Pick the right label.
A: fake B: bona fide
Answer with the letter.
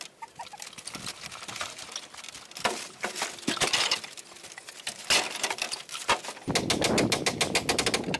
B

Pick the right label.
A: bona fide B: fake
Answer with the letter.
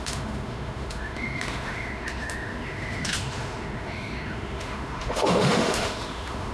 B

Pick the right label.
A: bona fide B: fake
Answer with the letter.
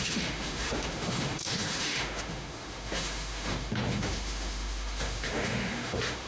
B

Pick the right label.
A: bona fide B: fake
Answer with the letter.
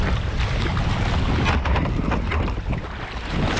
A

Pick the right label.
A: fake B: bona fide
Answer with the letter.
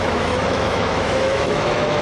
A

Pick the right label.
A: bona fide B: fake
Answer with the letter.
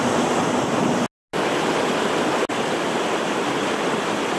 A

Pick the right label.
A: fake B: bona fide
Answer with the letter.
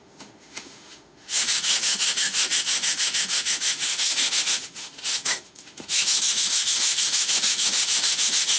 A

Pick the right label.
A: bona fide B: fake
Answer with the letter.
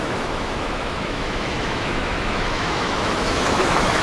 B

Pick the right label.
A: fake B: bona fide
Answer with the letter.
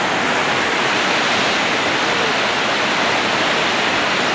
B